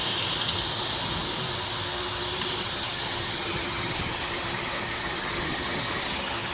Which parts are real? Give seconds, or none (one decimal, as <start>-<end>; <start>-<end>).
0.0-2.6